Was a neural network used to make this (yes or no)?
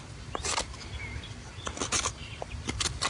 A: no